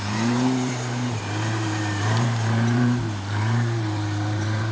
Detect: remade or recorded remade